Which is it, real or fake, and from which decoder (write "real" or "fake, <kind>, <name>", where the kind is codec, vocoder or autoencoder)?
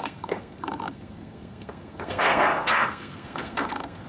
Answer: fake, codec, SNAC